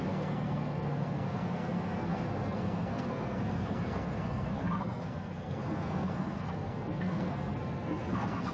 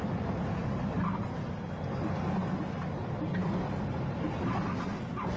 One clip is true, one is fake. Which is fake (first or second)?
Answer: first